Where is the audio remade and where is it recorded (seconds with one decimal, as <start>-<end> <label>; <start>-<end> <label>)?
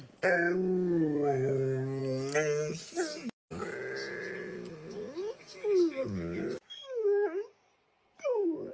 0.0-6.0 recorded; 6.0-7.7 remade; 7.7-8.7 recorded